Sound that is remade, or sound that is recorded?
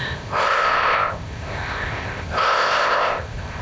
remade